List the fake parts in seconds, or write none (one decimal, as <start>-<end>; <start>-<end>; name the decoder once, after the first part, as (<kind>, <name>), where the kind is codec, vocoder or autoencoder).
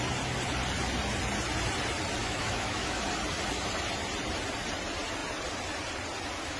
2.2-3.0 (autoencoder, DAC-VAE)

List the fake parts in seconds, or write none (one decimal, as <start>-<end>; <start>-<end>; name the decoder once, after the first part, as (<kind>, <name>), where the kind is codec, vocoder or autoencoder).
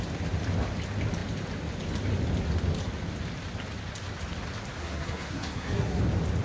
4.8-6.0 (codec, SNAC)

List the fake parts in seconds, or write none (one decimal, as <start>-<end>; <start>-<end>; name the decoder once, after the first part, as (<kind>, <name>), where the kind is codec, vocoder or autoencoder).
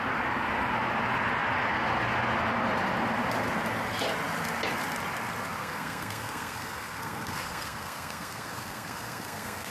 5.6-9.7 (codec, SNAC)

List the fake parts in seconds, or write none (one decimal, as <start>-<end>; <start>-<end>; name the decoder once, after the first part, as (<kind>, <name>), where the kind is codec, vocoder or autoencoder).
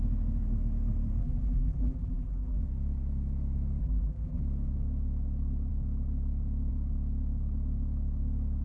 1.2-2.6 (vocoder, BigVGAN v2); 3.8-4.4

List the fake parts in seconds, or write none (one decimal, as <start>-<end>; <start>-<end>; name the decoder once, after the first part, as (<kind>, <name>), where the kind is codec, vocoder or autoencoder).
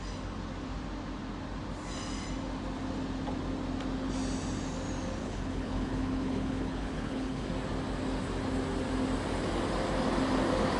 5.2-7.5 (codec, HILCodec)